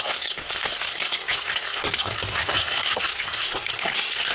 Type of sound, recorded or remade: remade